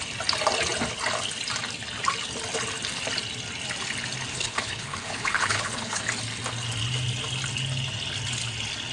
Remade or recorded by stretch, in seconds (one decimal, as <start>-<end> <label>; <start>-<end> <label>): 0.0-4.3 recorded; 4.3-6.0 remade; 6.0-8.9 recorded